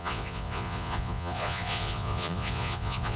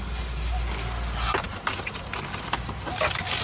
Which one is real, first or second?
second